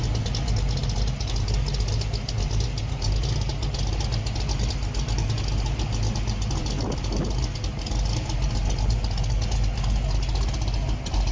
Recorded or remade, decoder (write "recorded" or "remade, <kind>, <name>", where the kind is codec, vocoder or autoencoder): recorded